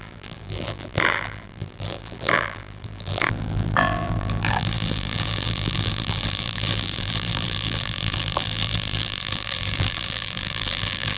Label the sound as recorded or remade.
remade